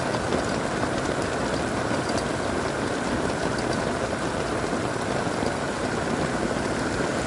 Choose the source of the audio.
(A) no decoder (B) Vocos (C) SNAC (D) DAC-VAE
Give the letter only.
A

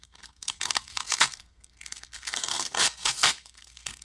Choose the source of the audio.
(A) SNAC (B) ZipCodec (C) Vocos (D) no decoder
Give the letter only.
A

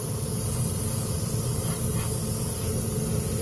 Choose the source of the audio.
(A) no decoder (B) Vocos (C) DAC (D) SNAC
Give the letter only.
A